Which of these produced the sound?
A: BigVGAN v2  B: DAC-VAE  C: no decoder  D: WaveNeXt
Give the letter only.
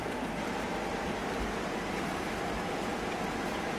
A